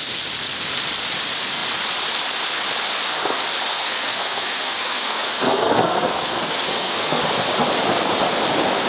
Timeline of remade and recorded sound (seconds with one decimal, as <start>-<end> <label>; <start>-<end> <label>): 0.0-3.7 recorded; 3.7-7.2 remade; 7.2-8.9 recorded